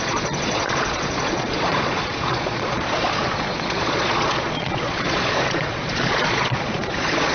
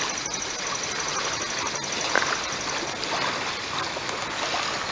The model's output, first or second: first